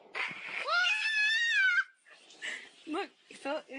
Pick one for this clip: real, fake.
real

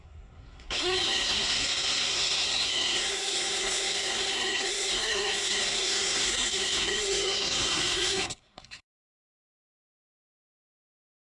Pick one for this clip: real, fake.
fake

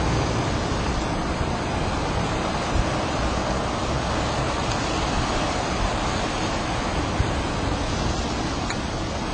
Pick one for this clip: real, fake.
real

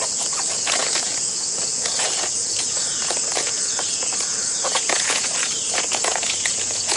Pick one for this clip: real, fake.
fake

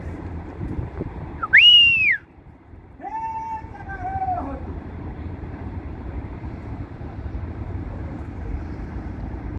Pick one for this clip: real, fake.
fake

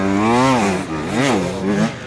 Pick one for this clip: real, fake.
real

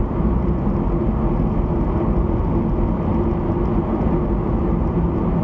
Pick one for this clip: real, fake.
real